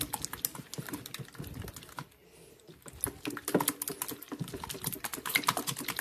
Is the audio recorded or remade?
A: recorded